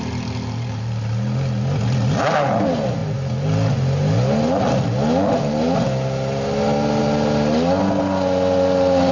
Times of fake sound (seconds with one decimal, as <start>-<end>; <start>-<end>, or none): none